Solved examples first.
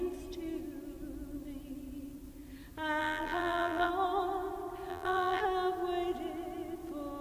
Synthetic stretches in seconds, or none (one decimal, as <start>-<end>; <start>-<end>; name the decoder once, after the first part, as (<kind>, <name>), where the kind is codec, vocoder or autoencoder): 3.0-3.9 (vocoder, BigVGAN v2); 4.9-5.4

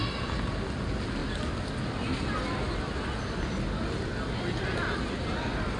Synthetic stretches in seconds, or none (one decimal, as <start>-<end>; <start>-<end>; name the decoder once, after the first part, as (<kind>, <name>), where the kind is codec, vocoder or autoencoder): none

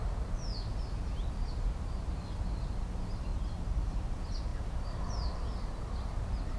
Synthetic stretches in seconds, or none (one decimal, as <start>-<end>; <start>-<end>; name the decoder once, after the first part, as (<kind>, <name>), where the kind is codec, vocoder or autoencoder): 3.3-4.1 (vocoder, BigVGAN v2); 4.5-5.1

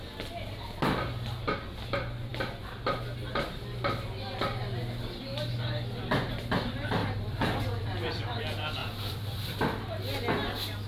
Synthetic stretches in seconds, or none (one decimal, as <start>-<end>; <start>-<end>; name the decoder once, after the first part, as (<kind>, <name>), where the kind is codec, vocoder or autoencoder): 7.0-8.4 (vocoder, BigVGAN v2); 8.8-9.6